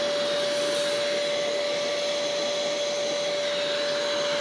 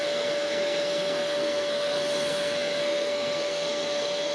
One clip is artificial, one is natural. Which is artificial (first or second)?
second